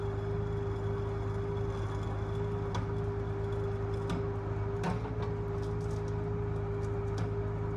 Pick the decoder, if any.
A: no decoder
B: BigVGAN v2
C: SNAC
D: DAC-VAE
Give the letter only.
A